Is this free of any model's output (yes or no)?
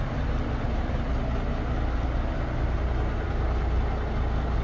yes